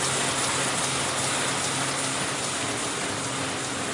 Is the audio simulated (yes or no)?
no